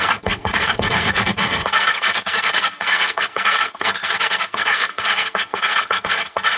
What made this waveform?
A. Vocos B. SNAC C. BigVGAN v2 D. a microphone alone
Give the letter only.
B